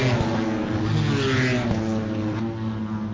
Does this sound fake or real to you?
real